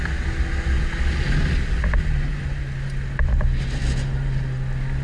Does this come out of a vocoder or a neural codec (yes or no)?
no